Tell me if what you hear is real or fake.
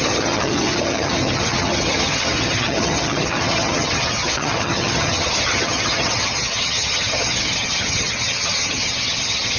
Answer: fake